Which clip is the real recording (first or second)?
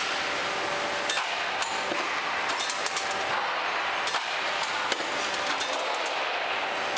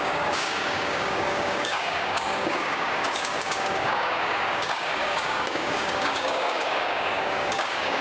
first